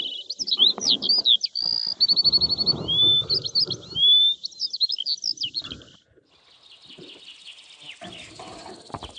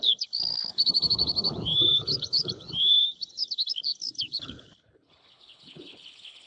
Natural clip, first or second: first